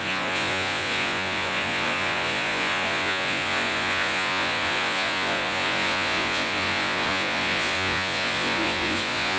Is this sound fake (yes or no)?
yes